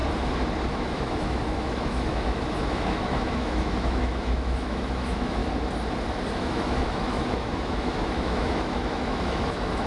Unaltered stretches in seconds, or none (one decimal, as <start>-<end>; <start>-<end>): 0.0-0.7; 5.4-6.3